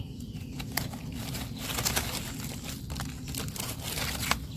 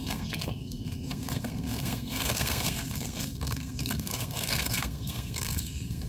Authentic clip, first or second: first